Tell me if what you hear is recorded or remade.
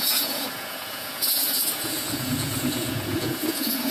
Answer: remade